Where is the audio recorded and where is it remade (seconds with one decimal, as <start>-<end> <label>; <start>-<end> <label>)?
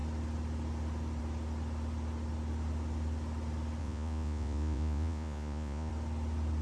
0.0-3.8 recorded; 3.8-5.9 remade; 5.9-6.6 recorded